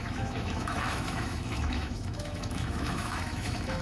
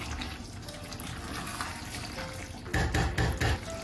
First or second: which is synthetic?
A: first